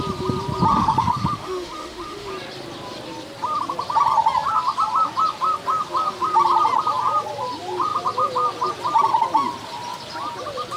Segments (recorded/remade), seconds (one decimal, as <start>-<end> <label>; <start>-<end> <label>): 0.0-0.7 recorded; 0.7-2.3 remade; 2.3-10.8 recorded